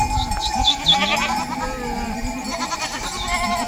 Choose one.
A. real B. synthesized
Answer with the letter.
A